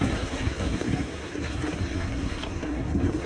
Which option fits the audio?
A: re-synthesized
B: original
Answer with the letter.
A